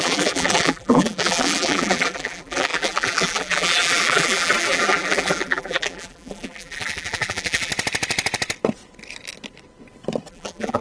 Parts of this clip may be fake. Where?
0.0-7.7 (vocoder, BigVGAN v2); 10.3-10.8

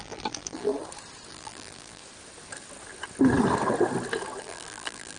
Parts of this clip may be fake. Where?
0.0-0.7 (vocoder, BigVGAN v2); 1.3-2.0; 4.4-5.2

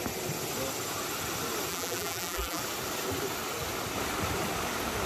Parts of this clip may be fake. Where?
1.7-2.6 (vocoder, BigVGAN v2)

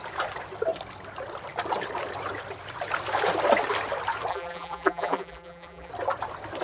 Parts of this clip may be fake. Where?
4.3-5.9 (vocoder, BigVGAN v2)